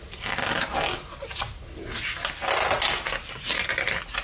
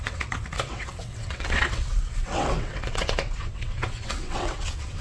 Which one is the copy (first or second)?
second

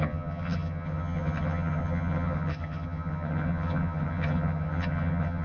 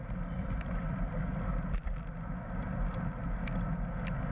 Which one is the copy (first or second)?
first